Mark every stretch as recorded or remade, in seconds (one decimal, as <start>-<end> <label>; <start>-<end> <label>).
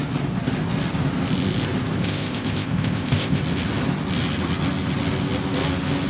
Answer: 0.0-2.0 recorded; 2.0-3.4 remade; 3.4-6.1 recorded